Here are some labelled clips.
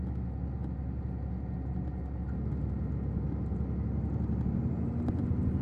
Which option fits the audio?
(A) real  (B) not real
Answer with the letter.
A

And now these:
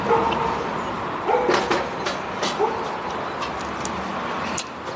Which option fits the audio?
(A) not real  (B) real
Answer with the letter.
B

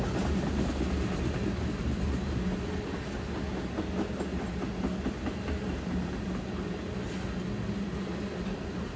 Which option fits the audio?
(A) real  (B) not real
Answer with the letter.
A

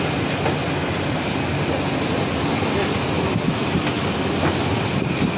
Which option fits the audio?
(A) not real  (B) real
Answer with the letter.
B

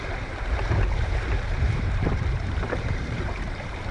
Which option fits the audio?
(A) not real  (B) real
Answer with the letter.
A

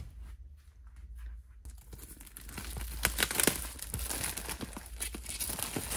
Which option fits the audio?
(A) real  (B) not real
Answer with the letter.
A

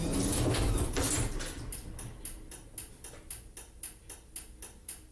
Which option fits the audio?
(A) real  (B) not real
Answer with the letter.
A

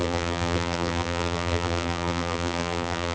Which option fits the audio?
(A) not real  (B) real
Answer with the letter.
A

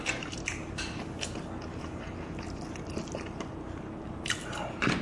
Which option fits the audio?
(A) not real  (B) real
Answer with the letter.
B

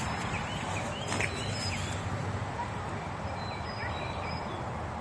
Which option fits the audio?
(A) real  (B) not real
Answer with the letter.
B